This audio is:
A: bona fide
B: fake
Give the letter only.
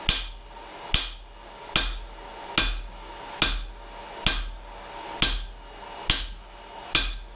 A